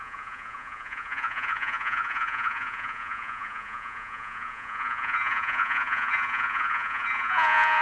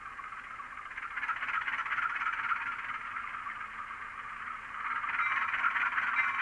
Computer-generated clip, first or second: first